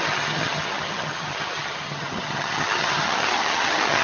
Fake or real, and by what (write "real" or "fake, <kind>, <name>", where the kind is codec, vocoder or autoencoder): fake, vocoder, HiFi-GAN